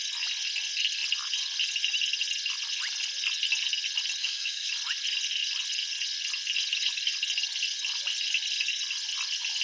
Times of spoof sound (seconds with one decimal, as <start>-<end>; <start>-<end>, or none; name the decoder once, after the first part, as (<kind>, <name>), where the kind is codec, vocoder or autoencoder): 4.2-4.7 (codec, SNAC)